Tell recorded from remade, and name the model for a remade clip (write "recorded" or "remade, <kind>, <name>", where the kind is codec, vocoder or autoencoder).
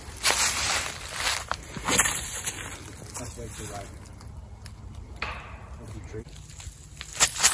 recorded